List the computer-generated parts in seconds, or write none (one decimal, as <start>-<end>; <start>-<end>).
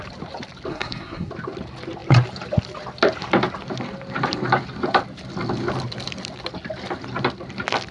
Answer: 0.7-1.3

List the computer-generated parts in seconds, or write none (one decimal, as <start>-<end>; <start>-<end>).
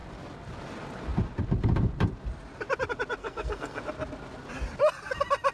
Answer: 3.2-3.8